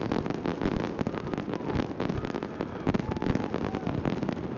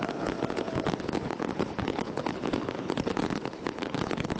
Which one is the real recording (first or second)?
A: first